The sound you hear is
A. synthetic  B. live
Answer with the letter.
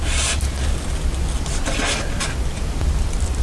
B